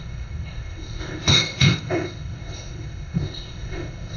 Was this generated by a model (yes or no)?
yes